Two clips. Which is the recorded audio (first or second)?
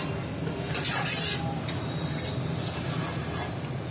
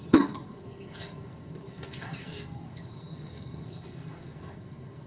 first